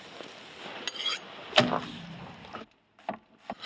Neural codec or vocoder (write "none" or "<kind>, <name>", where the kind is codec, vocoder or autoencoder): none